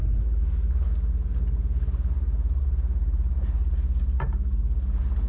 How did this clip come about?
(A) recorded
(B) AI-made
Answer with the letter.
A